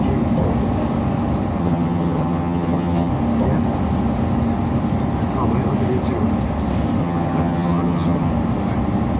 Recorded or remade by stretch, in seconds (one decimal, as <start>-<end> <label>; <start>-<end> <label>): 0.0-1.6 recorded; 1.6-3.1 remade; 3.1-7.0 recorded; 7.0-8.3 remade; 8.3-9.2 recorded